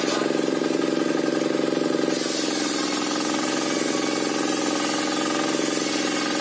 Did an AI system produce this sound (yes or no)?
no